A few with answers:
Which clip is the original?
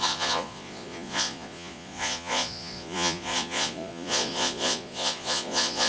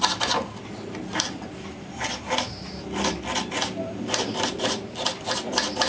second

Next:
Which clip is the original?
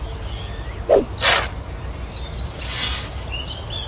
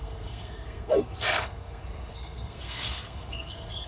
first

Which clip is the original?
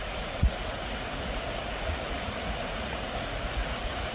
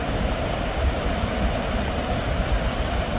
second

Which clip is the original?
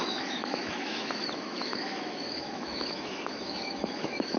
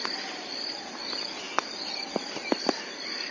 second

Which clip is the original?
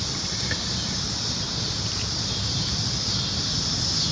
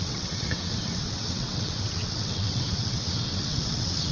first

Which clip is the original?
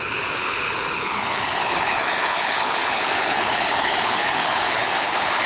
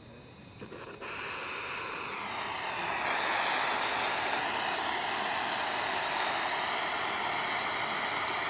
second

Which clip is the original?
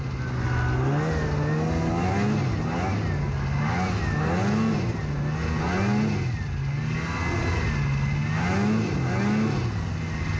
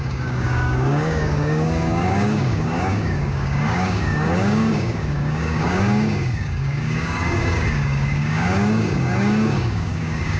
first